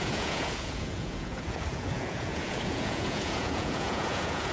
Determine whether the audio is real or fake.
fake